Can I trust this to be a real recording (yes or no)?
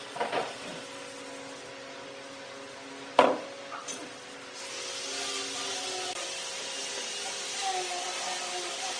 yes